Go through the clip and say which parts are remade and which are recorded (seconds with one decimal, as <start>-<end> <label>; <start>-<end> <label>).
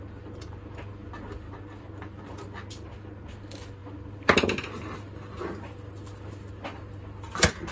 0.0-7.7 recorded